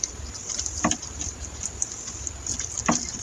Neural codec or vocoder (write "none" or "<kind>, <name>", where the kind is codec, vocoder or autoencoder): none